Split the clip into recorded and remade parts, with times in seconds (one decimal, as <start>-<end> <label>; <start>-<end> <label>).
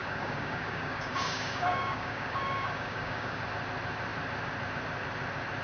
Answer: 0.0-3.4 remade; 3.4-5.6 recorded